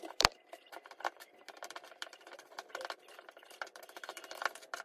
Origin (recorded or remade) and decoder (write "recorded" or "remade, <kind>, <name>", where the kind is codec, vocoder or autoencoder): remade, vocoder, BigVGAN v2